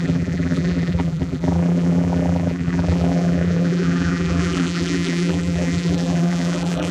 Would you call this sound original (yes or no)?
no